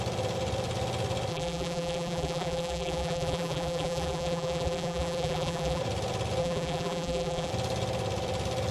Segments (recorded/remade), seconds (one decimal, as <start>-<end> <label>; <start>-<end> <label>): 0.0-1.3 recorded; 1.3-5.8 remade; 5.8-6.4 recorded; 6.4-7.5 remade; 7.5-8.7 recorded